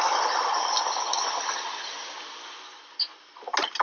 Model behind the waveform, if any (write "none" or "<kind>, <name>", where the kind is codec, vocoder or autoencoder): none